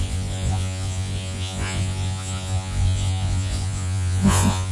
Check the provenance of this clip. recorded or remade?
remade